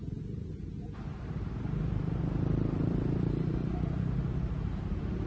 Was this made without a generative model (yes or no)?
no